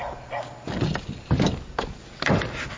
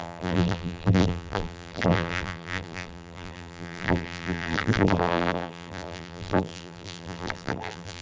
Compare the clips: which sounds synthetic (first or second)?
second